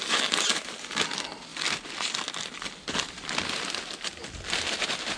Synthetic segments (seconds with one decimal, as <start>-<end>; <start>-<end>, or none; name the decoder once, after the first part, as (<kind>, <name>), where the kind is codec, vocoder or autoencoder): 0.5-1.1 (vocoder, BigVGAN v2)